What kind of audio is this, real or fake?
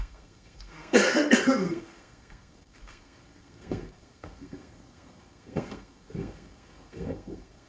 fake